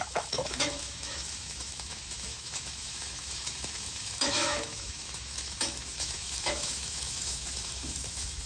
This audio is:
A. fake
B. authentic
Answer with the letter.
A